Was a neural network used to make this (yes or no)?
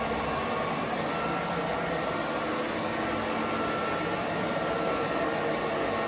no